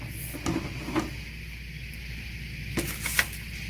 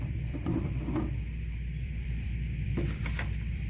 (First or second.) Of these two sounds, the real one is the first